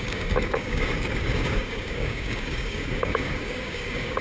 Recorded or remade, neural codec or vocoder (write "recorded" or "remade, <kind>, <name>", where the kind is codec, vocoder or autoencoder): remade, codec, DAC